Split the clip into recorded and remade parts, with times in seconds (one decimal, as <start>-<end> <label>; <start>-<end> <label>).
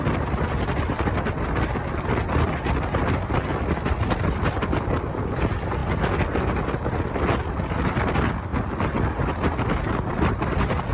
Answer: 0.0-10.9 recorded